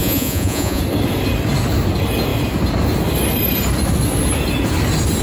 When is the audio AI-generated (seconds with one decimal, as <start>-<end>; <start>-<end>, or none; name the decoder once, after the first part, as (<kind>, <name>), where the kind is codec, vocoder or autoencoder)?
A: 0.0-0.8 (vocoder, Vocos)